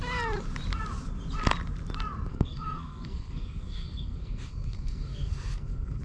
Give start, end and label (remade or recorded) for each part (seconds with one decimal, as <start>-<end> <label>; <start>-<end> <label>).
0.0-2.3 recorded; 2.3-6.0 remade